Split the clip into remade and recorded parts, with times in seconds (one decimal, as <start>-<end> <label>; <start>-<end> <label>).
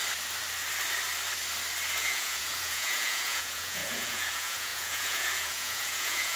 0.0-2.0 recorded; 2.0-6.4 remade